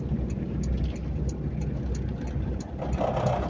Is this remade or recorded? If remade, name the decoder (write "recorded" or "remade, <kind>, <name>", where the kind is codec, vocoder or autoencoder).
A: recorded